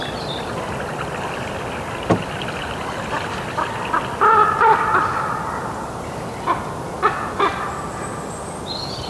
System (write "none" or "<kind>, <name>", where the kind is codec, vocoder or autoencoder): none